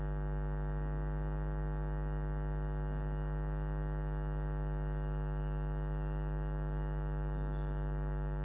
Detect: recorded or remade recorded